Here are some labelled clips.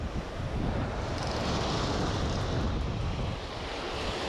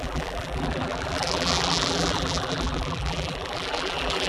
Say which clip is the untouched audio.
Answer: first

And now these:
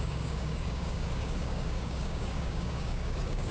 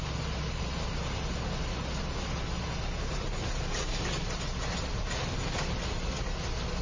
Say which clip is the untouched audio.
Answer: second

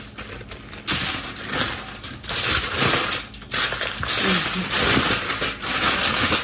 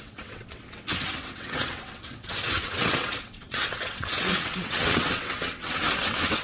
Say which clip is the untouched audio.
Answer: first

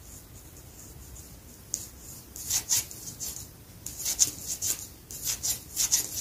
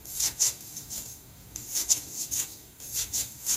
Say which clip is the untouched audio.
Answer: first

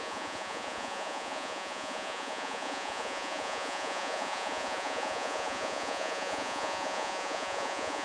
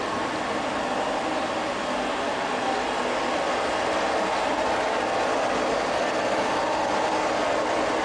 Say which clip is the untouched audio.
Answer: second